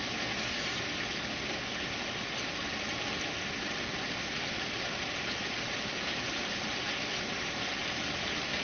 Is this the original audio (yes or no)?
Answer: yes